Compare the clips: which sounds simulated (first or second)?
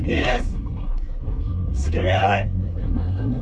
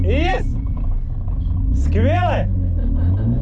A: first